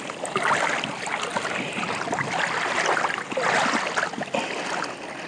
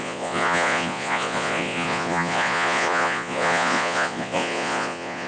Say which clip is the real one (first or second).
first